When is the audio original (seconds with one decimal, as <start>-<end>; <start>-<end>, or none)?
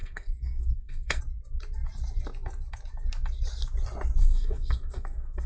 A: 1.2-4.2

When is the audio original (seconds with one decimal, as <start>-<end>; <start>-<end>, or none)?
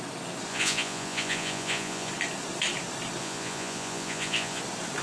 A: 0.0-0.5; 2.1-3.2; 4.6-5.0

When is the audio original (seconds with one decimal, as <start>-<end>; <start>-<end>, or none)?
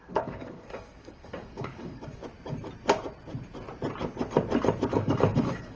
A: 2.2-4.9